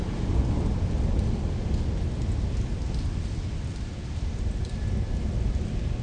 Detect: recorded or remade recorded